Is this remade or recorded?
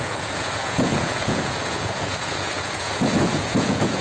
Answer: remade